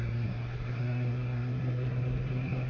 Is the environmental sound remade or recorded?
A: remade